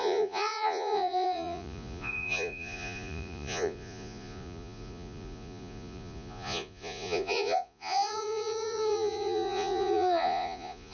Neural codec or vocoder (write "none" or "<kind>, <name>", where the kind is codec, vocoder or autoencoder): vocoder, Vocos